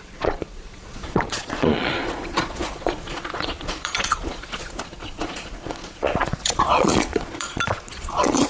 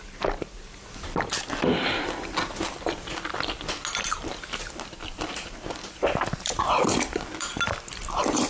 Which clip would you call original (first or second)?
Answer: second